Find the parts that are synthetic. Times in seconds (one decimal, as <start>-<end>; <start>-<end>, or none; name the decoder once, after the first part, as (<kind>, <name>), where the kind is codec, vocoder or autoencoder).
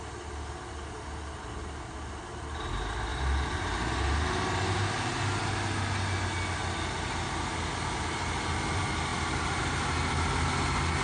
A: none